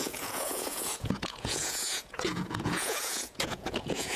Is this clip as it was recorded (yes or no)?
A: no